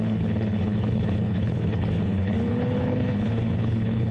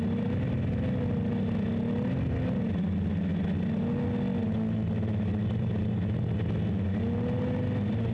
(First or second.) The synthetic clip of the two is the first